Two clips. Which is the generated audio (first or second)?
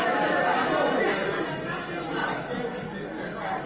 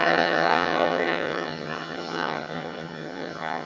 second